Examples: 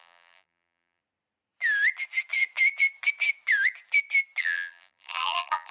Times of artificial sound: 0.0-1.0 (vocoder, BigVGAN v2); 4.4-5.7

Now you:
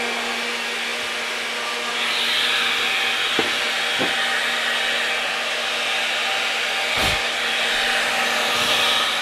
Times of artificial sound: 7.0-8.1 (vocoder, BigVGAN v2)

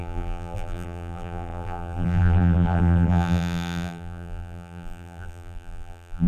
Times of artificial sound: 0.0-6.3 (vocoder, BigVGAN v2)

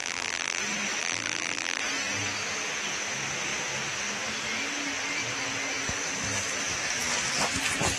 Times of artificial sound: 0.0-0.6 (vocoder, BigVGAN v2); 1.0-1.8